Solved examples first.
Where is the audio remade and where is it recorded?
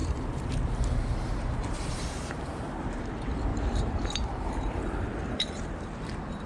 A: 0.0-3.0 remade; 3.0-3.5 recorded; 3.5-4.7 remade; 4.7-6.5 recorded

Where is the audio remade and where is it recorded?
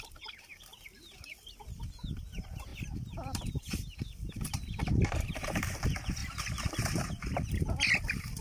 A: 0.0-8.4 remade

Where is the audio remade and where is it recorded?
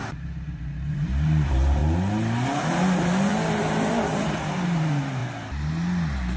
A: 0.0-1.8 remade; 1.8-2.7 recorded; 2.7-5.2 remade; 5.2-6.4 recorded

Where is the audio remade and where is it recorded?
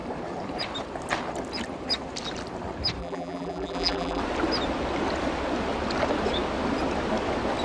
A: 0.0-3.0 recorded; 3.0-4.2 remade; 4.2-7.6 recorded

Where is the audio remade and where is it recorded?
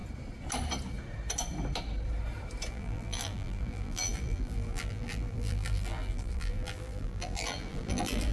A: 0.0-2.7 recorded; 2.7-8.3 remade